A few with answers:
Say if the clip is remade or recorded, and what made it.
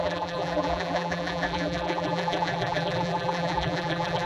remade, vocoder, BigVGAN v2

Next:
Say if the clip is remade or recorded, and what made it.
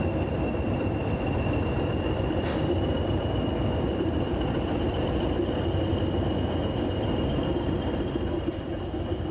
remade, vocoder, BigVGAN v2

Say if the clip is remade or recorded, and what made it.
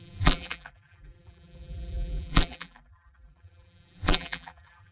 remade, vocoder, BigVGAN v2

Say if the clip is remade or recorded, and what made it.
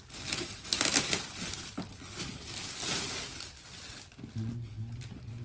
recorded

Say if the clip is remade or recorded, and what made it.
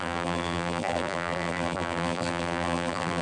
remade, vocoder, BigVGAN v2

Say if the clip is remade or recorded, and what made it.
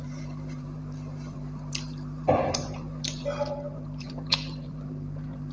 remade, vocoder, BigVGAN v2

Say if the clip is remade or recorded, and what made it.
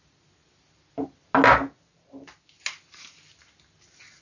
recorded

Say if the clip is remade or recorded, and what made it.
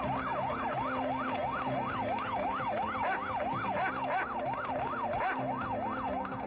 recorded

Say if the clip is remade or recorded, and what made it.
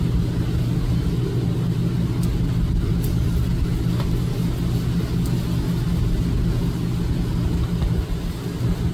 recorded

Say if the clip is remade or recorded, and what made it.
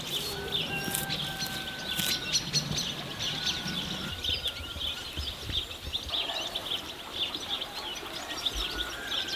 recorded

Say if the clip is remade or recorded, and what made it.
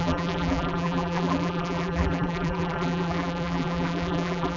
remade, vocoder, BigVGAN v2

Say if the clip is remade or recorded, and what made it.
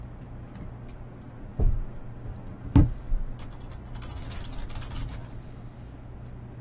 recorded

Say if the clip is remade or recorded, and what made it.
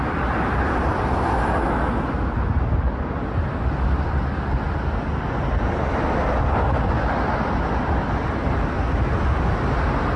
recorded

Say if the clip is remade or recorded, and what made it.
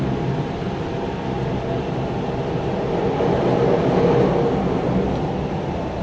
recorded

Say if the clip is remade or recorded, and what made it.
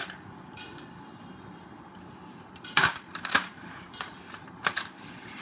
remade, vocoder, BigVGAN v2